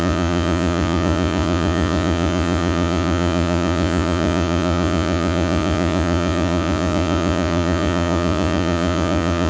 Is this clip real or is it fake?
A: fake